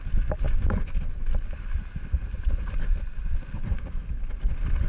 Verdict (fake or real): real